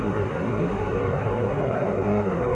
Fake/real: fake